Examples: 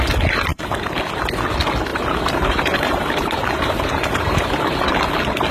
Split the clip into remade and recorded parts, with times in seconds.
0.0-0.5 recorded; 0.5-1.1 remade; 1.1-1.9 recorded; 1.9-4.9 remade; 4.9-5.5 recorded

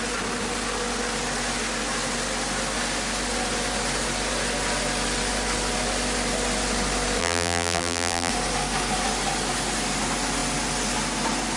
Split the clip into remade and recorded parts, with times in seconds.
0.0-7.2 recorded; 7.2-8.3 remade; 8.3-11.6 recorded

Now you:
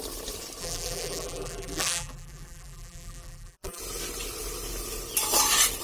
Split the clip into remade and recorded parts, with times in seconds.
0.0-0.6 recorded; 0.6-3.8 remade; 3.8-5.8 recorded